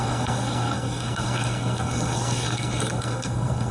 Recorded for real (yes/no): no